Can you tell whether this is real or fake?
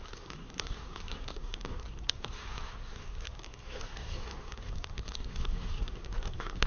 fake